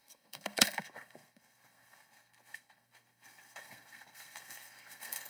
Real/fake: fake